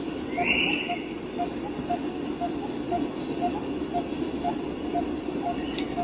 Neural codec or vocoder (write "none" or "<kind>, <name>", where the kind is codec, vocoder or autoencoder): none